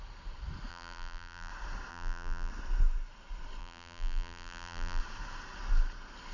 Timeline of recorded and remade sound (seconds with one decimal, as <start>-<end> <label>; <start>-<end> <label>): 0.0-0.7 recorded; 0.7-1.5 remade; 1.5-1.9 recorded; 1.9-2.5 remade; 2.5-3.6 recorded; 3.6-5.0 remade; 5.0-6.3 recorded